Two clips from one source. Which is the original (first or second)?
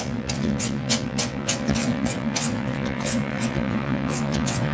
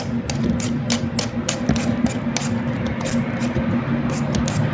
second